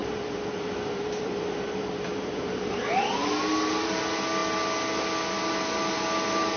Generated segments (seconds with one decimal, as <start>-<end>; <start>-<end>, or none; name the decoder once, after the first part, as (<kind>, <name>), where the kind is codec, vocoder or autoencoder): 0.0-4.0 (vocoder, BigVGAN v2)